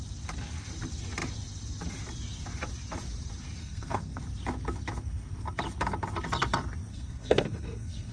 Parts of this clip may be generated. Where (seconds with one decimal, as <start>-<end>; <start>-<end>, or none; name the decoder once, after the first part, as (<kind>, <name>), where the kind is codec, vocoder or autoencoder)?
3.6-4.2 (codec, SNAC); 6.9-8.1